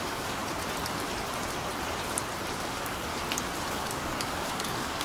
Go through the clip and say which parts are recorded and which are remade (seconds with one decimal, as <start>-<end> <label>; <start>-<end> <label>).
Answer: 0.0-0.4 remade; 0.4-2.5 recorded; 2.5-3.1 remade; 3.1-3.7 recorded; 3.7-5.0 remade